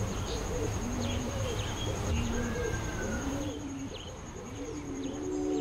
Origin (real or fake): fake